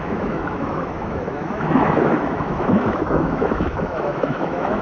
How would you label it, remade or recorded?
remade